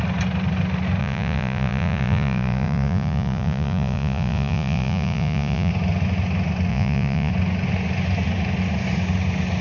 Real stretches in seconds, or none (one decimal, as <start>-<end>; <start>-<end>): 0.0-1.0; 5.7-6.7; 7.3-9.6